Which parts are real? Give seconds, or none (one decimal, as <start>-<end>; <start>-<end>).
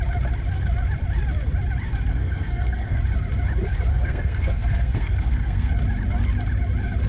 0.0-2.1; 3.0-3.9; 5.7-7.1